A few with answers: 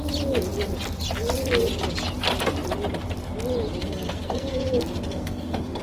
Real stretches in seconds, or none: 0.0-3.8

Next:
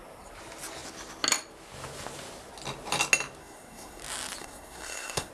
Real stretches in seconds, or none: 0.0-3.4; 4.0-4.4

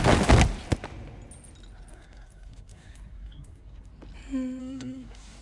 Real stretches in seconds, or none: 0.0-1.9; 3.9-4.6

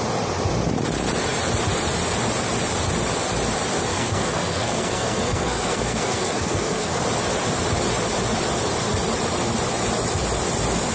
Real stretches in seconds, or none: 0.0-3.9; 7.0-10.9

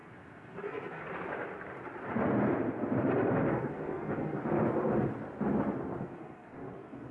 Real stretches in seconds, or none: 1.0-3.5; 4.4-6.0

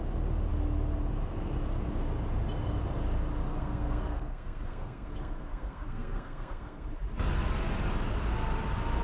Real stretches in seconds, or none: 0.0-3.6; 6.9-9.0

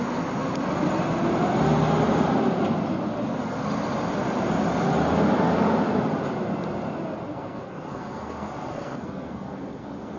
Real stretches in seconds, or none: 0.0-7.3